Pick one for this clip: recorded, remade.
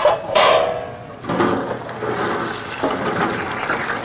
recorded